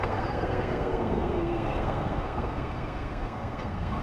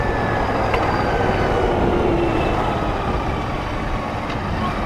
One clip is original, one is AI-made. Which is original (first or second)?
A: second